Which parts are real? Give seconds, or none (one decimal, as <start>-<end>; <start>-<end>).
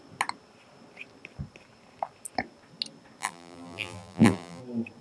0.0-3.2; 4.6-5.0